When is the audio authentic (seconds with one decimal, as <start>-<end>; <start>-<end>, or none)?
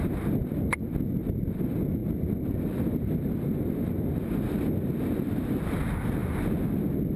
0.0-2.0; 5.3-7.2